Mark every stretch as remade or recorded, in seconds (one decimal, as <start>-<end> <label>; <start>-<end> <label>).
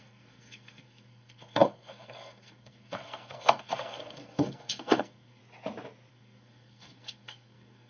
0.0-5.4 remade; 5.4-6.1 recorded; 6.1-7.9 remade